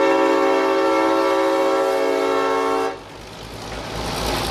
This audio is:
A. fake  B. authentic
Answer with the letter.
B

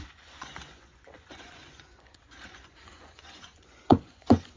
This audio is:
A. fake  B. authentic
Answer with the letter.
A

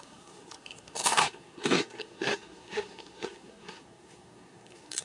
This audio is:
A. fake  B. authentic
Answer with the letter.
A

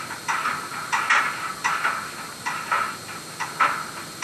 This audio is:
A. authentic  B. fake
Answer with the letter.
A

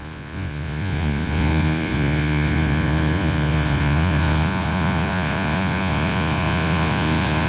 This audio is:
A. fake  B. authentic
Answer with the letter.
A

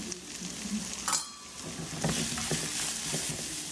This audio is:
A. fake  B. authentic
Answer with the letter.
B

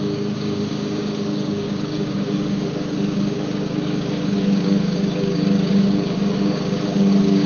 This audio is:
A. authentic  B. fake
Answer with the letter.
B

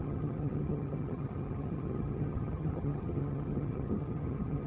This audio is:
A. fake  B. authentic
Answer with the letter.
A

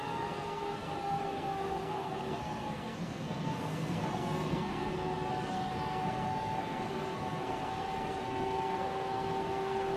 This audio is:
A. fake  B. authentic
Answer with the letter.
A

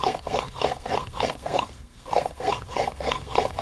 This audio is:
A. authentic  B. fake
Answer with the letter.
B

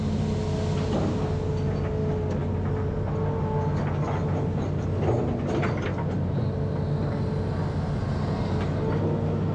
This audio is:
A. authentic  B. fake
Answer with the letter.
A